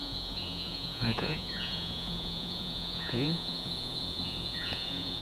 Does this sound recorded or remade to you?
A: remade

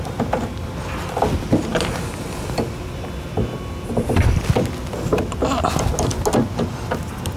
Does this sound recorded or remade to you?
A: recorded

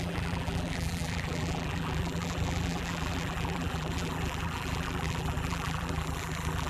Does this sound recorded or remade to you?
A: remade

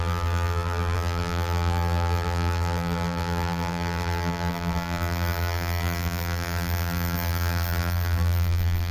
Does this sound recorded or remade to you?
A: remade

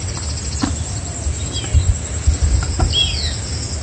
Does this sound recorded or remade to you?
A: recorded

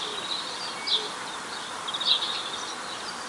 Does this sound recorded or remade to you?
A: recorded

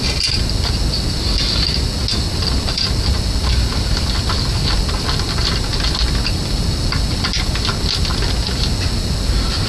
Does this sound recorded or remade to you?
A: recorded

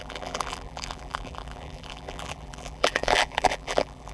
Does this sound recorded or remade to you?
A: remade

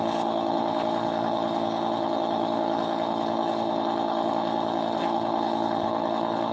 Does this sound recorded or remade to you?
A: remade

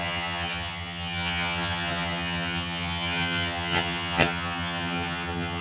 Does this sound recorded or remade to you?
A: remade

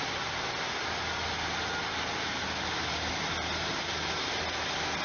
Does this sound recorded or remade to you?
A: recorded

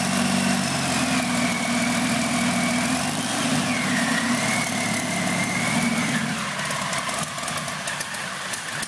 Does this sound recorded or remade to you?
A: recorded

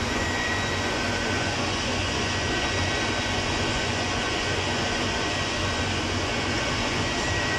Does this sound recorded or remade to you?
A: remade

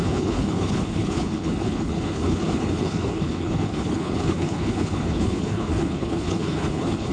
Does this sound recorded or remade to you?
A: remade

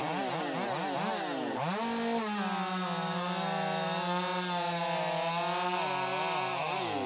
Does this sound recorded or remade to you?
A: recorded